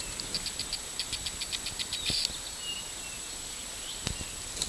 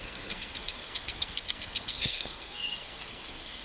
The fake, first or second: second